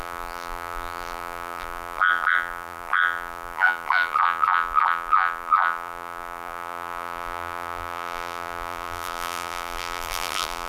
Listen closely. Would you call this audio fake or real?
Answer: fake